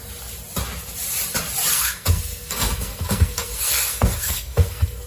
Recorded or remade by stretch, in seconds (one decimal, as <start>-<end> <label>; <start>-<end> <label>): 0.0-1.7 recorded; 1.7-5.1 remade